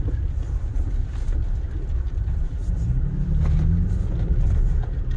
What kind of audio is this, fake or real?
real